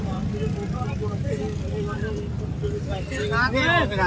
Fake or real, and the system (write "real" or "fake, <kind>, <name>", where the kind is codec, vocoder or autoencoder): real